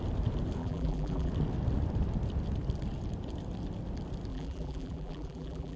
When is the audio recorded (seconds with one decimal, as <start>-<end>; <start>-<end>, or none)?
0.0-0.6; 1.3-4.3